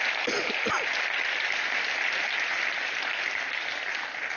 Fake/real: real